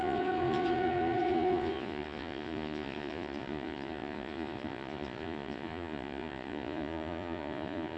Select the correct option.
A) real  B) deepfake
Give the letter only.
B